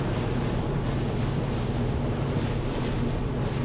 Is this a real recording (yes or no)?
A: yes